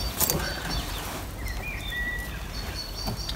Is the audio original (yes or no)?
yes